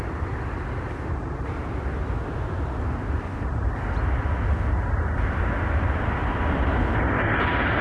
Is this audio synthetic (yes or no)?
no